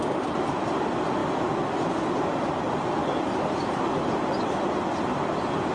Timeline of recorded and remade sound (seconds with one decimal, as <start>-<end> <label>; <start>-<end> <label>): 0.0-5.7 recorded